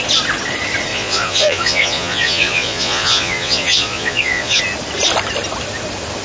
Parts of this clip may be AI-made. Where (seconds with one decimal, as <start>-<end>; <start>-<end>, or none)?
0.9-4.6